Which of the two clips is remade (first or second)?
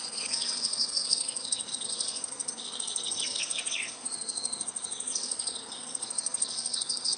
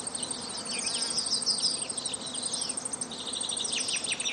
first